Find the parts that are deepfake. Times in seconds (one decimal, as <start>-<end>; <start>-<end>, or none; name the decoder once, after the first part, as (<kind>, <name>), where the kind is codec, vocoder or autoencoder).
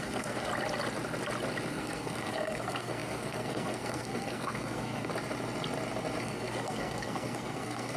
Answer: 0.0-0.5 (codec, SNAC); 1.7-5.1; 6.2-8.0